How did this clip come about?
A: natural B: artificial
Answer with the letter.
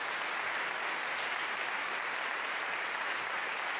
A